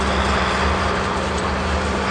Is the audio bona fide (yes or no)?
yes